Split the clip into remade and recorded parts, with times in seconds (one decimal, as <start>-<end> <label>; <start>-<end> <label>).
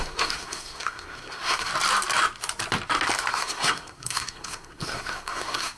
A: 0.0-1.7 remade; 1.7-3.3 recorded; 3.3-5.8 remade